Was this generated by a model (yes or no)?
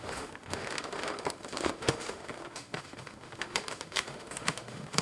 yes